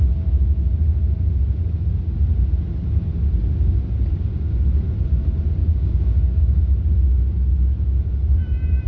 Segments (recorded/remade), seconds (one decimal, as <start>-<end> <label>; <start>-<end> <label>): 0.0-5.6 recorded; 5.6-6.7 remade; 6.7-8.9 recorded